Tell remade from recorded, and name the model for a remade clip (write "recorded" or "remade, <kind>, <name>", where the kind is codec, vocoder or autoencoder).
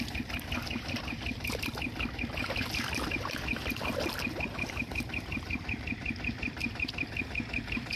remade, vocoder, BigVGAN v2